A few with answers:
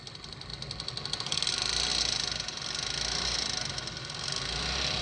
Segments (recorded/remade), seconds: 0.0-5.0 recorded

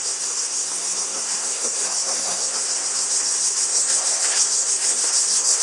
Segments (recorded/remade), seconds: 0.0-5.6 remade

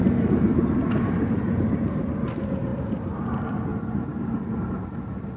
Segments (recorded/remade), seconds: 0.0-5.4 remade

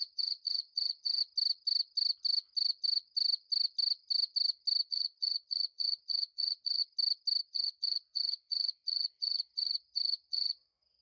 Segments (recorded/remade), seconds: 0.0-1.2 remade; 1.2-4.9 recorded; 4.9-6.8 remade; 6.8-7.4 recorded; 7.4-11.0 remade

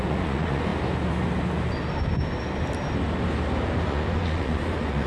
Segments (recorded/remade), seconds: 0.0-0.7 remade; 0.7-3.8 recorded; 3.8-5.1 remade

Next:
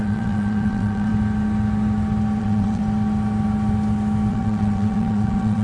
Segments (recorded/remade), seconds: 0.0-1.1 remade; 1.1-2.4 recorded; 2.4-2.8 remade; 2.8-4.3 recorded; 4.3-5.6 remade

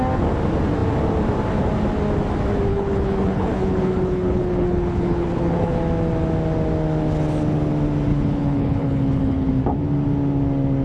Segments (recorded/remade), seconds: 0.0-2.7 recorded; 2.7-5.8 remade; 5.8-8.1 recorded; 8.1-9.5 remade; 9.5-10.8 recorded